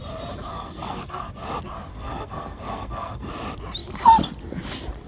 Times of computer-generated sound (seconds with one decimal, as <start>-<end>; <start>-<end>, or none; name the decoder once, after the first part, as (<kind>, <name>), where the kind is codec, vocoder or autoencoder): 0.5-1.3 (codec, SNAC); 1.9-3.3